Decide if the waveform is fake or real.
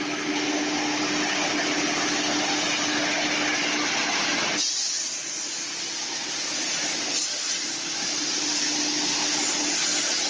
real